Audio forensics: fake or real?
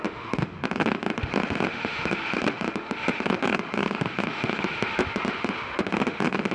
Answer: fake